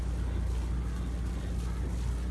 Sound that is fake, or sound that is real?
real